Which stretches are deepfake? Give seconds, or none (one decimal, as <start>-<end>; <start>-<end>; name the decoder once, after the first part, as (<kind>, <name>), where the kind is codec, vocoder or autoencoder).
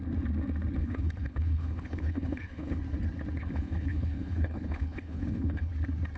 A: 0.8-2.8 (codec, HILCodec); 3.4-5.7